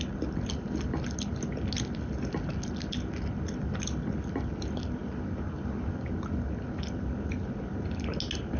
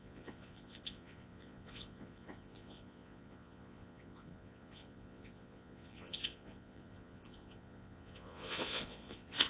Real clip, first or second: first